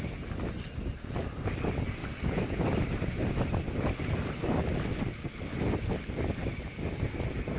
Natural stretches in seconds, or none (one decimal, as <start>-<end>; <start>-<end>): 0.0-7.6